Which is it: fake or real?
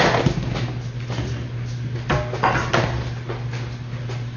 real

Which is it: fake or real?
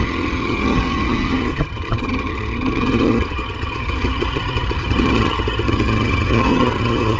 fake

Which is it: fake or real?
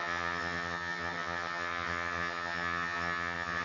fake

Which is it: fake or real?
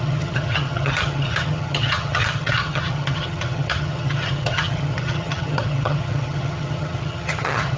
fake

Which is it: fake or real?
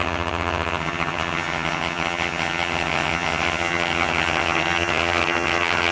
fake